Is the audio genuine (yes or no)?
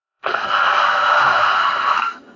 no